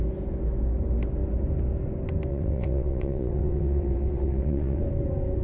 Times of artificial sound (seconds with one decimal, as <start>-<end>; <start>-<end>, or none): 2.3-4.8